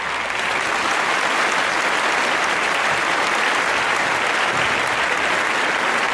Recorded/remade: recorded